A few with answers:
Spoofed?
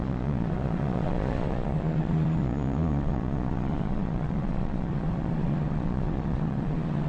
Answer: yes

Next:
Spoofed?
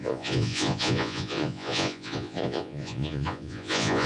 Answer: yes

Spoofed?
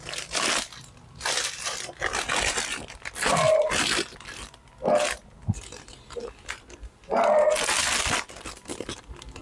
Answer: no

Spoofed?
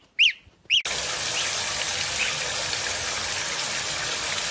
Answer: no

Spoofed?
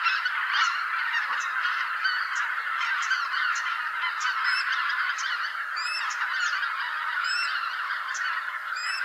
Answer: no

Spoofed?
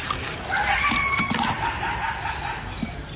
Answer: no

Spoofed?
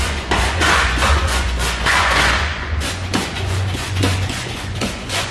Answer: yes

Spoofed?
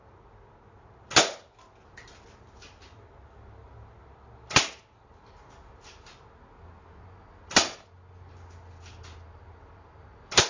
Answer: no